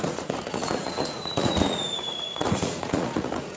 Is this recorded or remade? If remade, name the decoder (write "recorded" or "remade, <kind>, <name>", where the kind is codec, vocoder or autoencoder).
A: remade, vocoder, Vocos